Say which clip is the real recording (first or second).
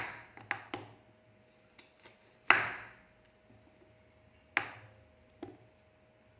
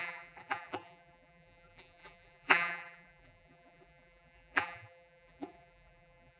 first